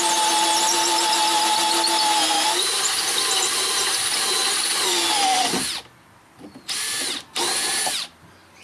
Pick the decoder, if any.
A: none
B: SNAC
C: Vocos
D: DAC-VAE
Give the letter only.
A